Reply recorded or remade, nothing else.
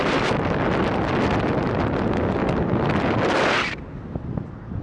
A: recorded